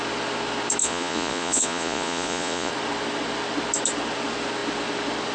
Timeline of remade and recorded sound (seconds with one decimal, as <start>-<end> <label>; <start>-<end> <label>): 0.0-0.8 recorded; 0.8-2.7 remade; 2.7-5.3 recorded